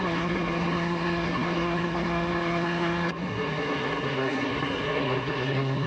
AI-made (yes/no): yes